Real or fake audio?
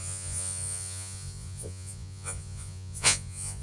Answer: fake